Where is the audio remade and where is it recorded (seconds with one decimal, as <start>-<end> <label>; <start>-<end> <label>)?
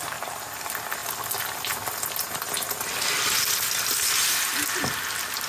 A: 0.0-5.5 recorded